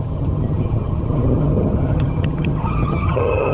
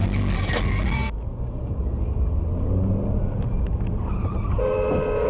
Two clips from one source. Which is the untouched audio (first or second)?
second